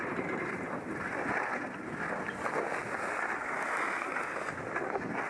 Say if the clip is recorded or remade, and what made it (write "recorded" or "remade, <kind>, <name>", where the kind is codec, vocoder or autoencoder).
recorded